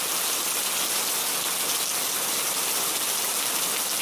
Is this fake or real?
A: real